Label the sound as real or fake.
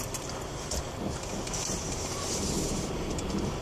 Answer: real